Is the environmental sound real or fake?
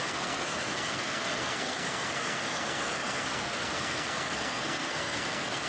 fake